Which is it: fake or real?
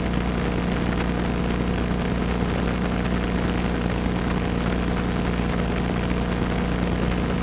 real